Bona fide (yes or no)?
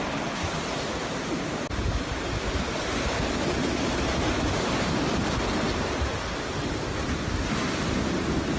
yes